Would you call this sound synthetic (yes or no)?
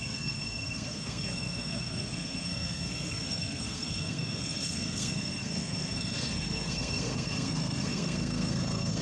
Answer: yes